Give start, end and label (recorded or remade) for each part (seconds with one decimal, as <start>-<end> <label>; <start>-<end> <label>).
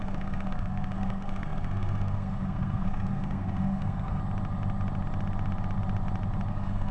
0.0-4.2 remade; 4.2-6.5 recorded; 6.5-6.9 remade